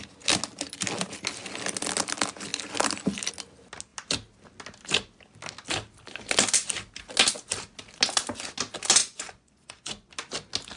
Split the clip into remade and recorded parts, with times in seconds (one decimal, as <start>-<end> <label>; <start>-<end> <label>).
0.0-9.0 recorded; 9.0-10.1 remade; 10.1-10.8 recorded